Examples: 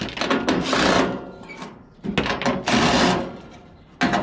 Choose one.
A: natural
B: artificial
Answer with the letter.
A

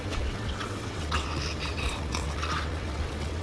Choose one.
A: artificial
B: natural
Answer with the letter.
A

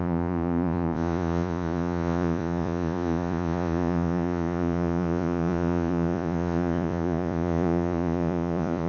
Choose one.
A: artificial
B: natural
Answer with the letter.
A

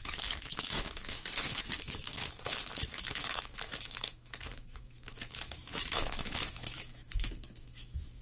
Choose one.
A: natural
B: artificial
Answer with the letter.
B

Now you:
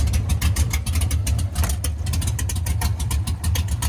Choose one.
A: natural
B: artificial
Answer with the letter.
A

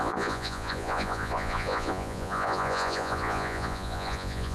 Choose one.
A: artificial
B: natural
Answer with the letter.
A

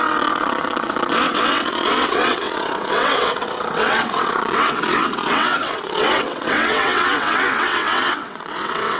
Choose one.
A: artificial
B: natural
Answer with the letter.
A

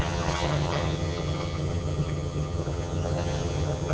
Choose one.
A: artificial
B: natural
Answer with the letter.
A